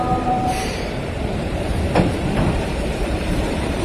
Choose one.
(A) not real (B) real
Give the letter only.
A